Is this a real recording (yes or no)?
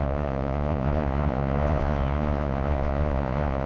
no